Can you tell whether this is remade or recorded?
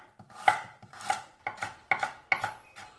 recorded